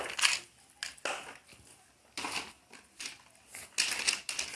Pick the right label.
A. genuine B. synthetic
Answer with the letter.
A